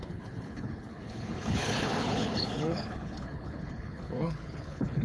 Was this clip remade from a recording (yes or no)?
yes